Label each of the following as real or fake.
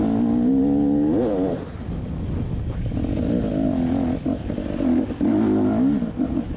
real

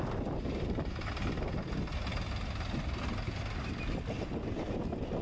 real